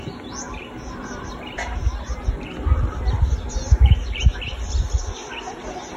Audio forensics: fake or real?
real